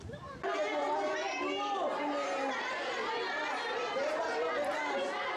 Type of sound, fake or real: real